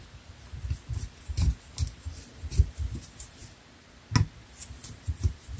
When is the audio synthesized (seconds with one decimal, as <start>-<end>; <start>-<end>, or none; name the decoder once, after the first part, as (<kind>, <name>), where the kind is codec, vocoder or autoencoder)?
none